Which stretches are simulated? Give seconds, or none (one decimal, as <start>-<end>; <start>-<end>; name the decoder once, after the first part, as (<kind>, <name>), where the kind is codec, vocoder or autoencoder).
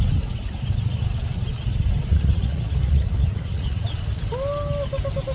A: 2.1-3.9 (vocoder, Vocos)